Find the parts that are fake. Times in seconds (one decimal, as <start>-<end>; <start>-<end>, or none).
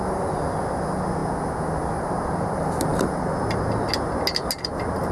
none